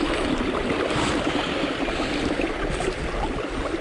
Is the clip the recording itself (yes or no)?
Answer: yes